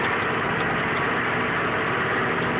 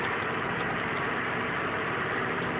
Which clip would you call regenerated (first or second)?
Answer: second